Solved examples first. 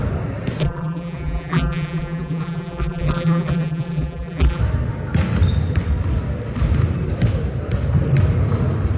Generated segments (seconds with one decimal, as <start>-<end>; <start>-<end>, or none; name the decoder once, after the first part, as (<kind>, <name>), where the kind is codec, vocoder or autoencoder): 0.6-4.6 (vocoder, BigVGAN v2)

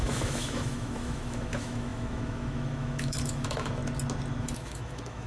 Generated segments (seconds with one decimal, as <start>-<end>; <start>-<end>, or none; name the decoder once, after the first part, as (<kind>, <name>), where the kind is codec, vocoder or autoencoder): 0.0-3.8 (autoencoder, DAC-VAE); 4.4-5.3

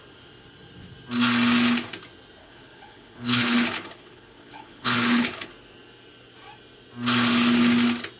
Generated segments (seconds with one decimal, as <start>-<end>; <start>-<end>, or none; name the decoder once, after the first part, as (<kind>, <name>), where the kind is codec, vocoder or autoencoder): 2.4-5.5 (codec, HILCodec)

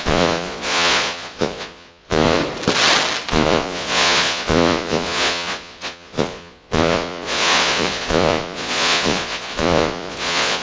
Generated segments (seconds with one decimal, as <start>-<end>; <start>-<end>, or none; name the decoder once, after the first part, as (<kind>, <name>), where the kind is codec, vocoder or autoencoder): 0.0-2.4 (vocoder, Vocos); 3.3-10.6